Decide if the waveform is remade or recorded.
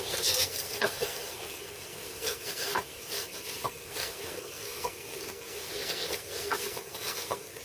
remade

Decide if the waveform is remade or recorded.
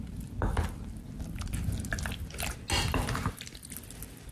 recorded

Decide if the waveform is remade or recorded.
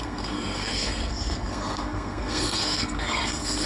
remade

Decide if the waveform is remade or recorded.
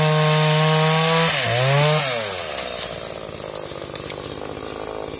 recorded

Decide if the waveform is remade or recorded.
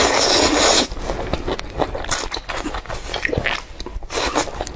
recorded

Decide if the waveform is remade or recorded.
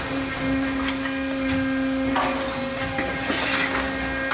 recorded